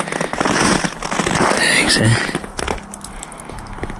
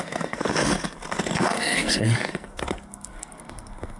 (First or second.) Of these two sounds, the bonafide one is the first